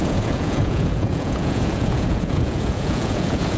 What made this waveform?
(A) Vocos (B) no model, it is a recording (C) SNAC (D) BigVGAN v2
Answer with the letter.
A